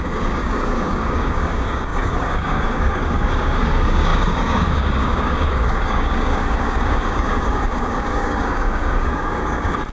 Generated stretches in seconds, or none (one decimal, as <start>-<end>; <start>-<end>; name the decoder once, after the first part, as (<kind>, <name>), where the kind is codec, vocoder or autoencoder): 0.0-9.9 (codec, DAC)